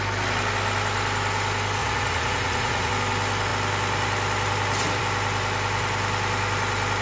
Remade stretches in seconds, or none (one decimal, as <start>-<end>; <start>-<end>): 1.8-2.9